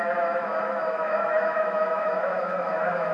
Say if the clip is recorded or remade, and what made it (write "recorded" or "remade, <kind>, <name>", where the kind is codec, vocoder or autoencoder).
remade, autoencoder, DAC-VAE